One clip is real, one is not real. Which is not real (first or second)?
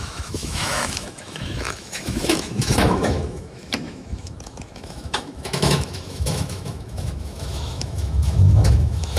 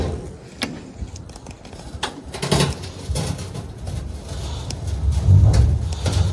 first